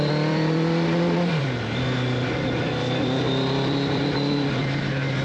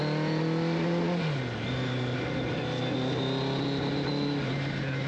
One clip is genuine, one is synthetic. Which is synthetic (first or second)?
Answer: first